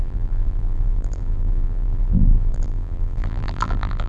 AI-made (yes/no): yes